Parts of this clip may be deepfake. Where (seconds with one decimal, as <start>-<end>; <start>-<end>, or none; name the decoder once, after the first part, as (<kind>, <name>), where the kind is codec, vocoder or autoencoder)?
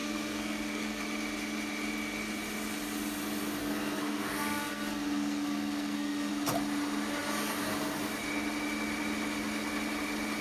0.0-1.0 (codec, SNAC); 3.6-6.3